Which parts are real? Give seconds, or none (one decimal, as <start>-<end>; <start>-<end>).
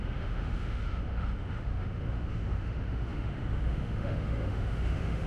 none